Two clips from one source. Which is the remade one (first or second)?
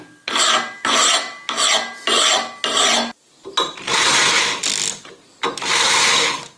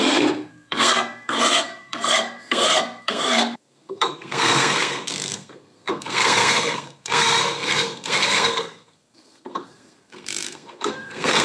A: second